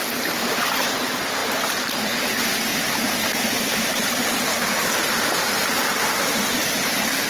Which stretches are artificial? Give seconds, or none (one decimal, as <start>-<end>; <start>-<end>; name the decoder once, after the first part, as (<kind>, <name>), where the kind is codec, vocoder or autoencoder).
1.4-2.2 (vocoder, BigVGAN v2)